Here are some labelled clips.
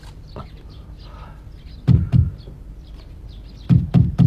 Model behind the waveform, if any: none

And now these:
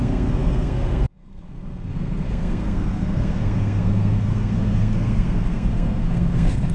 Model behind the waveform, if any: codec, SNAC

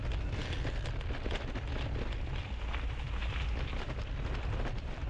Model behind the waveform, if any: none